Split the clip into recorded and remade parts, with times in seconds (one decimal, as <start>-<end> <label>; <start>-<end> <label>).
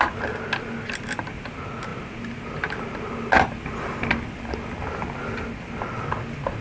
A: 0.0-6.6 recorded